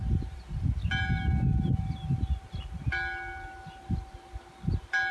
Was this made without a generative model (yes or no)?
yes